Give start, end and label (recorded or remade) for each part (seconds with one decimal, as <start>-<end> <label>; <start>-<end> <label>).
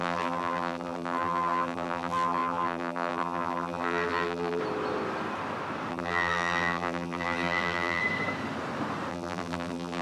0.0-4.6 remade; 4.6-5.9 recorded; 5.9-8.0 remade; 8.0-9.1 recorded; 9.1-10.0 remade